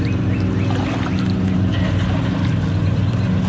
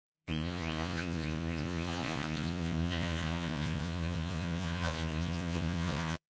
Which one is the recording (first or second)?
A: first